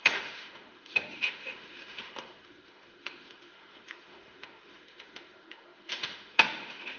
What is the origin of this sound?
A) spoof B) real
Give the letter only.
A